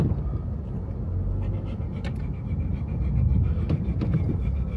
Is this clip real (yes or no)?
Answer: yes